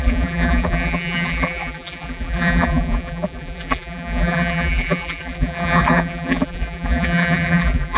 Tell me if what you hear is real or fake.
fake